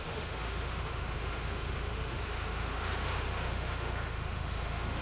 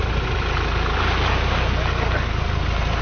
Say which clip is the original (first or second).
second